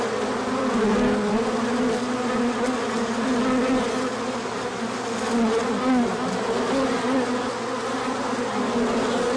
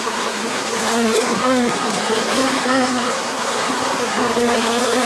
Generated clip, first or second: second